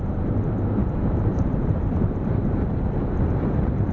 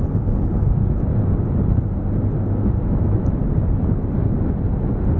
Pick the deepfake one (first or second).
first